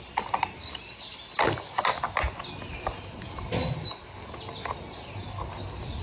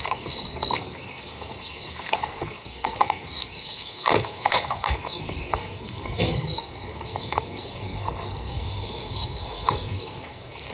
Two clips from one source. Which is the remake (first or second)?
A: second